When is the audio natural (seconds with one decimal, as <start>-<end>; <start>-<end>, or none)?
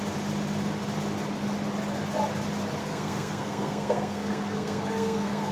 0.0-2.8